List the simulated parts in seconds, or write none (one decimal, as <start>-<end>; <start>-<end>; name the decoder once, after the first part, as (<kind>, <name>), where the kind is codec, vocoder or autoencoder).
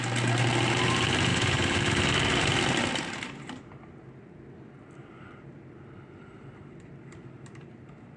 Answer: 1.3-2.0 (autoencoder, DAC-VAE)